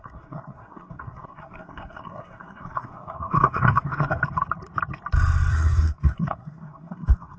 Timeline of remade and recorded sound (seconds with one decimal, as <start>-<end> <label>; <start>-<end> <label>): 0.0-4.2 remade; 4.2-5.5 recorded; 5.5-7.4 remade